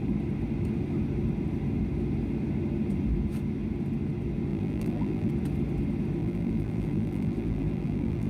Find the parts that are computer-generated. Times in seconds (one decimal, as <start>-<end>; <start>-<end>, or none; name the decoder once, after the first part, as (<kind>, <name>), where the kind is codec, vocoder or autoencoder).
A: 4.5-5.3 (vocoder, BigVGAN v2); 6.2-8.3